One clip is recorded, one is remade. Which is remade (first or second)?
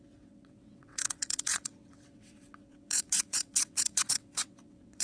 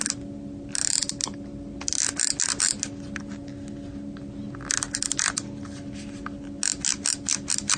first